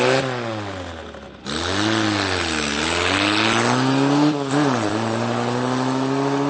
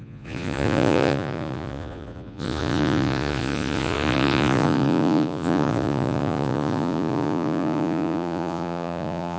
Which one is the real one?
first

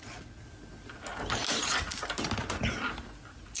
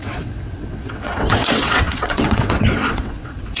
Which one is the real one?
first